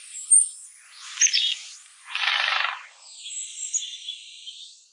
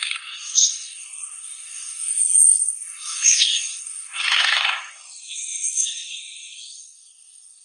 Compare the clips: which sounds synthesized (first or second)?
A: second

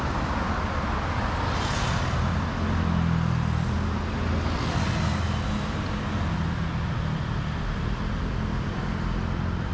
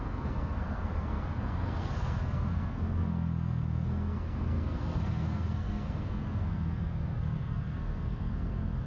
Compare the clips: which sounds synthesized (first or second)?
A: second